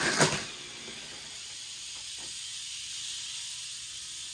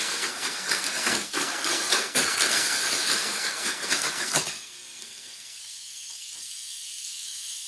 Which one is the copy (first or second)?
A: second